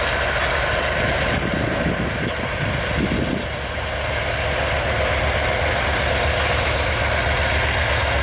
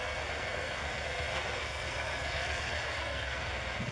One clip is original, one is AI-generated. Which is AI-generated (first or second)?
second